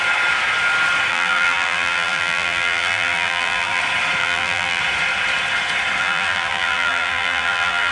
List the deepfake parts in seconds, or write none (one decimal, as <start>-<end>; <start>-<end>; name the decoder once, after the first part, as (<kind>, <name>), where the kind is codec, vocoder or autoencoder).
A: 1.1-3.8 (vocoder, BigVGAN v2); 4.2-4.8; 6.0-7.9